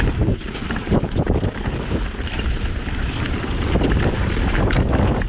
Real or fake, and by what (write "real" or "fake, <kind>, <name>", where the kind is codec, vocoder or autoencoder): fake, vocoder, BigVGAN v2